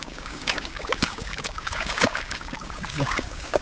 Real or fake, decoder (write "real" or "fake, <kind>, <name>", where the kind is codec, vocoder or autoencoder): fake, codec, DAC